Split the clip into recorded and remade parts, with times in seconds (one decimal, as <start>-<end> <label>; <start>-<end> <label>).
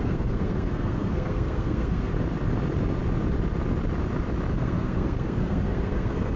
0.0-2.1 remade; 2.1-4.5 recorded; 4.5-6.4 remade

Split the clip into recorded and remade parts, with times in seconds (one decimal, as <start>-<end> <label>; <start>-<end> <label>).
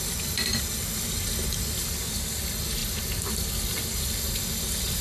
0.0-5.0 recorded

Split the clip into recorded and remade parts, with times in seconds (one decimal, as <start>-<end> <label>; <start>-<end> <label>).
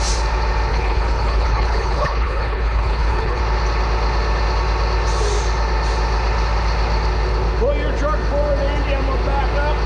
0.0-0.7 recorded; 0.7-3.4 remade; 3.4-9.9 recorded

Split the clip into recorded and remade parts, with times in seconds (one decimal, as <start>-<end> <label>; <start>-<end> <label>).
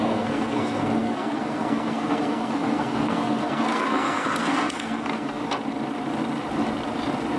0.0-5.4 remade; 5.4-7.4 recorded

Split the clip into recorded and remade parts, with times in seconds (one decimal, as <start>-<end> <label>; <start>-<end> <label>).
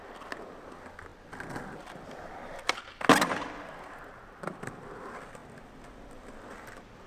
0.0-7.1 recorded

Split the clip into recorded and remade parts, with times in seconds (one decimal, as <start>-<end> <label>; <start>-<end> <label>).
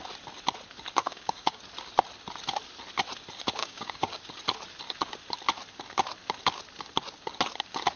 0.0-1.0 recorded; 1.0-1.6 remade; 1.6-3.6 recorded; 3.6-4.2 remade; 4.2-8.0 recorded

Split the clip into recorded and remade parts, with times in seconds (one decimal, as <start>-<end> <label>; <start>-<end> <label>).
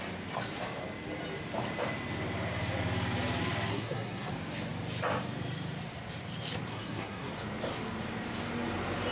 0.0-3.7 recorded; 3.7-4.3 remade; 4.3-6.7 recorded; 6.7-7.3 remade; 7.3-9.1 recorded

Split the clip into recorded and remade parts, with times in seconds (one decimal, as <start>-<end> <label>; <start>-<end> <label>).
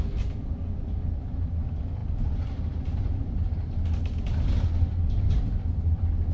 0.0-6.3 recorded